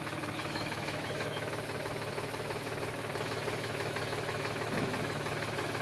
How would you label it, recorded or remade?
remade